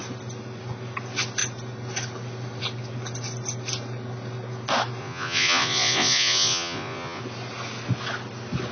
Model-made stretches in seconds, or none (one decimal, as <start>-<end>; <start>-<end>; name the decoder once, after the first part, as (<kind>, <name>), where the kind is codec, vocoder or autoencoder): 5.0-7.2 (vocoder, Vocos)